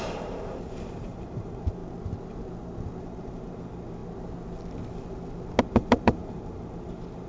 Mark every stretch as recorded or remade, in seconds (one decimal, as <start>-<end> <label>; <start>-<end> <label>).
0.0-1.8 remade; 1.8-3.0 recorded; 3.0-4.0 remade; 4.0-5.6 recorded; 5.6-7.3 remade